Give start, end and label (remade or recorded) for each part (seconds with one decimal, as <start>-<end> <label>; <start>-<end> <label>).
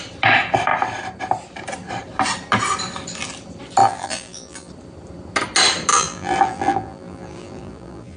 0.0-3.8 recorded; 3.8-4.7 remade; 4.7-5.9 recorded; 5.9-8.2 remade